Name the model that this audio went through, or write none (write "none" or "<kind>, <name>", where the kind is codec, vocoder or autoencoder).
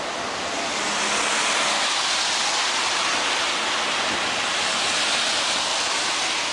none